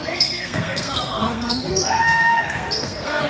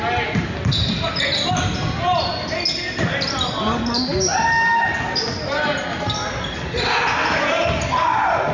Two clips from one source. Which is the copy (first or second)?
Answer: first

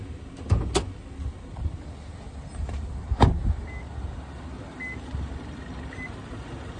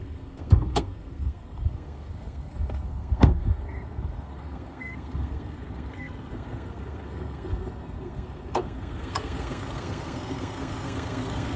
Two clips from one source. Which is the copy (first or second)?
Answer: second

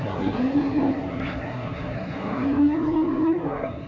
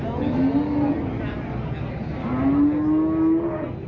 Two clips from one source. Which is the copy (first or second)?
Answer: first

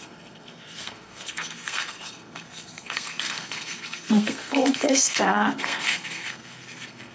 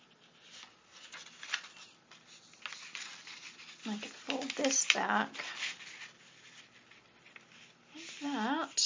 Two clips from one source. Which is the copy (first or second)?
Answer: first